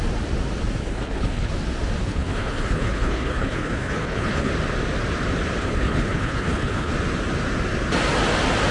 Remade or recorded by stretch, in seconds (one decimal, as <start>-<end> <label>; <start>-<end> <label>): 0.0-0.8 recorded; 0.8-1.5 remade; 1.5-2.0 recorded; 2.0-4.5 remade; 4.5-5.6 recorded; 5.6-6.9 remade; 6.9-8.7 recorded

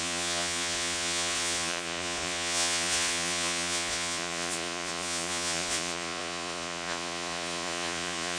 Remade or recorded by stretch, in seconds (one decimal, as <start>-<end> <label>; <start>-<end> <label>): 0.0-8.4 remade

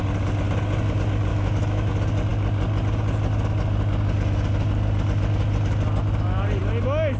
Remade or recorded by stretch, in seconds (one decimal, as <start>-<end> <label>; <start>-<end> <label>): 0.0-1.3 recorded; 1.3-1.9 remade; 1.9-7.2 recorded

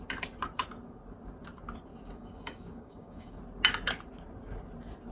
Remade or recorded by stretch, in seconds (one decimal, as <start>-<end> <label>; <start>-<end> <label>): 0.0-1.9 recorded; 1.9-3.4 remade; 3.4-5.1 recorded

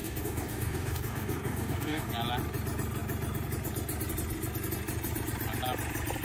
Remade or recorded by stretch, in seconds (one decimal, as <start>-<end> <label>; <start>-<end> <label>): 0.0-2.1 remade; 2.1-6.2 recorded

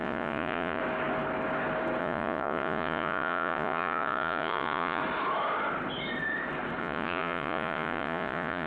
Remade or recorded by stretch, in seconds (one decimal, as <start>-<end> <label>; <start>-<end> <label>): 0.0-0.8 remade; 0.8-2.0 recorded; 2.0-5.0 remade; 5.0-6.8 recorded; 6.8-8.7 remade